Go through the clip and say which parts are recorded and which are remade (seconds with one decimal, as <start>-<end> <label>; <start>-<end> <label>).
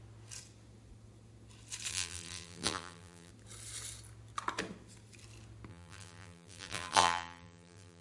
0.0-1.9 recorded; 1.9-3.3 remade; 3.3-5.7 recorded; 5.7-8.0 remade